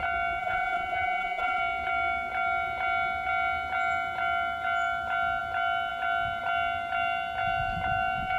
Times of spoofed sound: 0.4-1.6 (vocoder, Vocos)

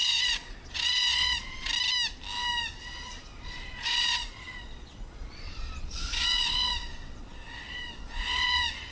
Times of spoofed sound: 0.0-1.7 (vocoder, Vocos); 2.8-8.9

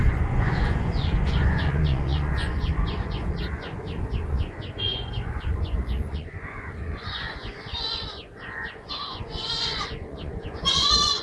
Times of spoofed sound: 0.0-11.2 (vocoder, Vocos)

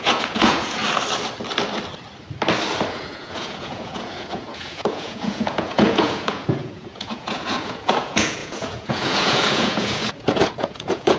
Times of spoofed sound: 0.0-0.8 (vocoder, Vocos); 2.9-11.2

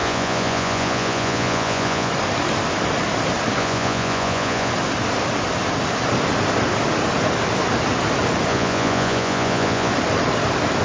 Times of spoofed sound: 0.0-2.1 (vocoder, Vocos); 3.6-4.7; 8.5-9.9